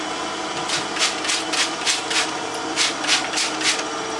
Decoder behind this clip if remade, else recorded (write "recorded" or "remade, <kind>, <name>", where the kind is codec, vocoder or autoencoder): recorded